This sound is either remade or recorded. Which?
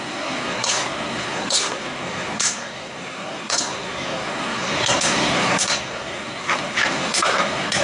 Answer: remade